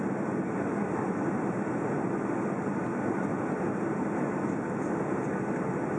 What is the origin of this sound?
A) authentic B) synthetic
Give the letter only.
A